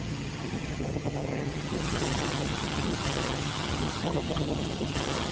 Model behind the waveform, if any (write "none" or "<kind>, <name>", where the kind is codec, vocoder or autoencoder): vocoder, HiFi-GAN